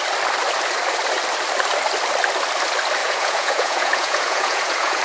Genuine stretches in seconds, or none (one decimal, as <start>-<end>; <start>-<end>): 0.0-3.0